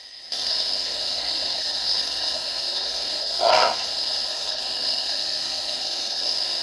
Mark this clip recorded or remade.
remade